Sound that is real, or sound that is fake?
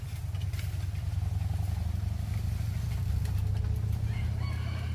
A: real